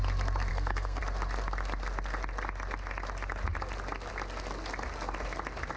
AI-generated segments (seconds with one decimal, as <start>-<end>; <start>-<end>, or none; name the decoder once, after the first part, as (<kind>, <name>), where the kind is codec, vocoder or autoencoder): 0.5-1.0 (codec, SNAC)